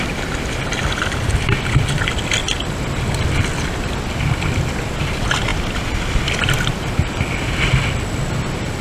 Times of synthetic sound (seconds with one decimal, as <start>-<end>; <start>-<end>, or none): none